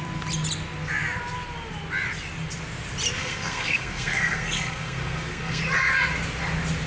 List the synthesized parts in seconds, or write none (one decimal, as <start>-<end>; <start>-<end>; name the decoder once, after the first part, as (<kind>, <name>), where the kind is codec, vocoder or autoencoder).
3.2-5.6 (codec, SNAC)